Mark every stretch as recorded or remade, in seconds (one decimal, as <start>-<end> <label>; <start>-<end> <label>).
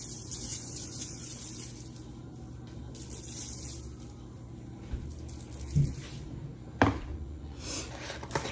0.0-0.5 recorded; 0.5-1.4 remade; 1.4-7.1 recorded; 7.1-7.8 remade; 7.8-8.5 recorded